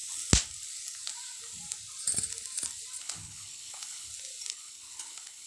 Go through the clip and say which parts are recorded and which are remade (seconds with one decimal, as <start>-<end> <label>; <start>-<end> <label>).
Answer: 0.0-3.0 recorded; 3.0-4.1 remade; 4.1-4.5 recorded; 4.5-5.5 remade